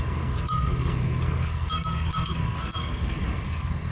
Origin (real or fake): fake